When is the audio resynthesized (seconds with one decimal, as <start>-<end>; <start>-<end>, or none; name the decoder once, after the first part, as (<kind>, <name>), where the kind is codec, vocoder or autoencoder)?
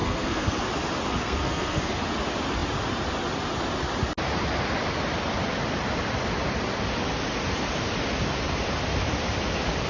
0.0-0.6 (codec, SNAC); 1.1-2.0